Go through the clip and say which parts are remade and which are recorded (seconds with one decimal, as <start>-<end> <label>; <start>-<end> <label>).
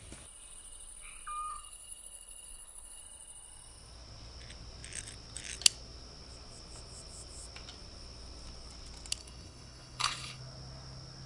0.0-1.5 recorded; 1.5-3.0 remade; 3.0-9.2 recorded; 9.2-10.4 remade; 10.4-11.3 recorded